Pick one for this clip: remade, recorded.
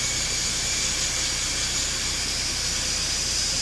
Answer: recorded